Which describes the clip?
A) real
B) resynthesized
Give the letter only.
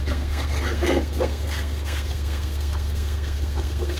B